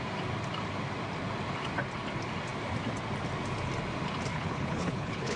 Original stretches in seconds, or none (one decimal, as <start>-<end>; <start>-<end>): 0.0-4.3